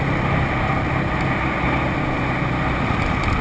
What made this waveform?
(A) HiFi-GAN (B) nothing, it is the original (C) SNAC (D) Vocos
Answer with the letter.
B